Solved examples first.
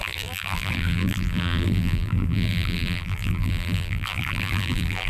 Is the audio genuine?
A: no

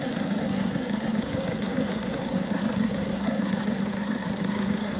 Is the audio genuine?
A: no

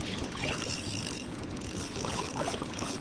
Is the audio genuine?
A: no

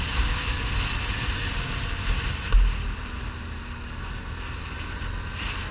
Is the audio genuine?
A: yes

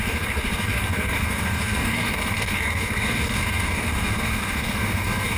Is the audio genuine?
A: no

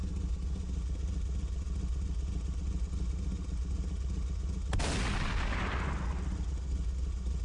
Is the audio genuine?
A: yes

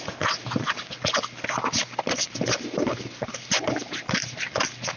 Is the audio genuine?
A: yes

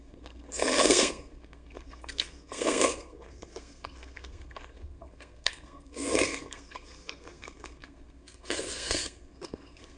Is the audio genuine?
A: no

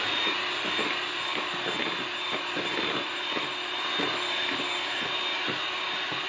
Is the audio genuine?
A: yes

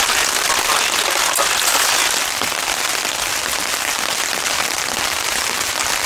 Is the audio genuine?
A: yes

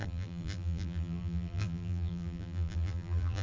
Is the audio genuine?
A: no